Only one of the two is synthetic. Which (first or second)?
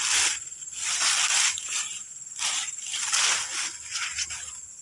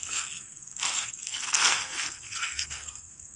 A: second